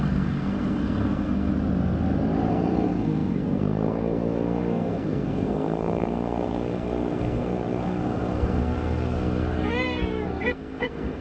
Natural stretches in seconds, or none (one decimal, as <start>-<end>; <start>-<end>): 1.5-2.5